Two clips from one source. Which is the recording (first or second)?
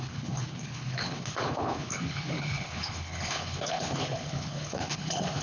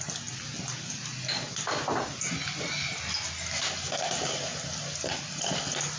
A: second